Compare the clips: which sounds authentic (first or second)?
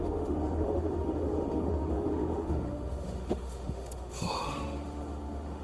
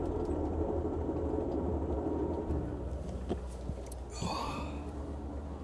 second